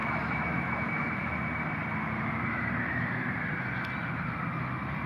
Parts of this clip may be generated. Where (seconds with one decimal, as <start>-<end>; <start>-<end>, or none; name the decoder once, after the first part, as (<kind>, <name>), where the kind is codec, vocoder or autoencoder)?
0.0-1.4 (autoencoder, DAC-VAE)